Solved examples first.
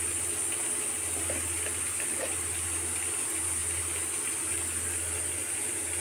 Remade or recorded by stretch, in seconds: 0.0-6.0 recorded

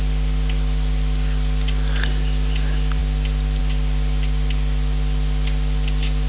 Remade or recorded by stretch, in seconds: 0.0-6.3 recorded

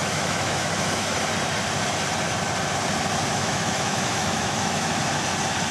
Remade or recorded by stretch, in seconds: 0.0-1.3 remade; 1.3-3.3 recorded; 3.3-5.0 remade; 5.0-5.7 recorded

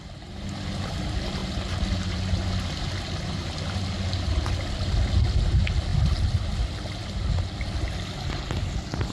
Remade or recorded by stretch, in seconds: 0.0-9.1 recorded

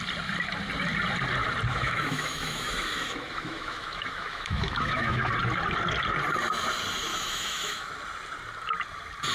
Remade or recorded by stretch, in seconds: 0.0-1.7 recorded; 1.7-5.3 remade; 5.3-7.1 recorded; 7.1-7.9 remade; 7.9-9.3 recorded

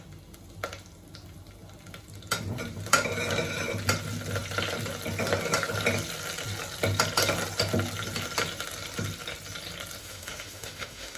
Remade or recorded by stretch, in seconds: 0.0-10.0 recorded; 10.0-11.2 remade